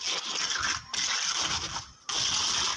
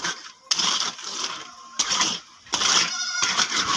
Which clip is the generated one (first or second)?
second